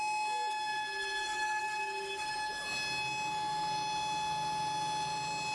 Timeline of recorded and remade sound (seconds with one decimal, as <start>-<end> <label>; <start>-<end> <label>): 0.0-5.5 recorded